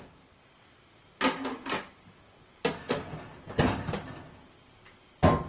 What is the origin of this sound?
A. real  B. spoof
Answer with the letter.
A